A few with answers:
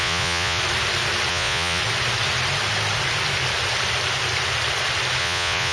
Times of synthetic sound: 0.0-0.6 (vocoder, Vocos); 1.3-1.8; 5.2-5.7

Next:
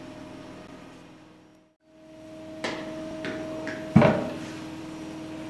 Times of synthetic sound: none

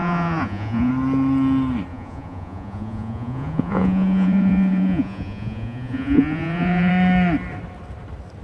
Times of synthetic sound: 0.0-0.9 (vocoder, Vocos); 1.9-6.9

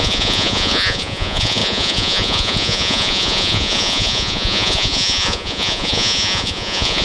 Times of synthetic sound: 0.0-7.0 (vocoder, Vocos)